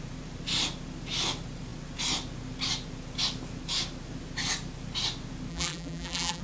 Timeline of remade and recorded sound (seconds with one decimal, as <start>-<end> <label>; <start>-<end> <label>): 0.0-5.5 recorded; 5.5-6.4 remade